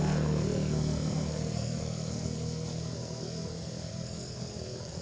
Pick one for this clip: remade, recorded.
remade